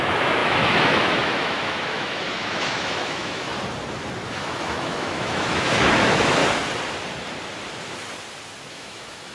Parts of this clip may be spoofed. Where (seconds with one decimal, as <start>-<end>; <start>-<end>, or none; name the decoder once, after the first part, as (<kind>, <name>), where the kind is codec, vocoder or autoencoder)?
0.0-3.5 (autoencoder, DAC-VAE); 4.3-6.4; 8.7-9.3